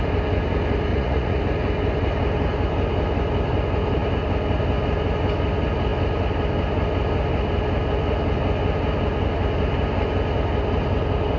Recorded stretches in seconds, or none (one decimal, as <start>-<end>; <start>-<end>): 0.0-0.9; 1.4-11.4